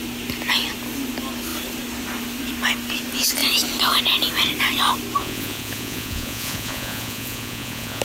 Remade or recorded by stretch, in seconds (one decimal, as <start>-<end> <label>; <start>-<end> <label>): 0.0-5.2 recorded; 5.2-8.0 remade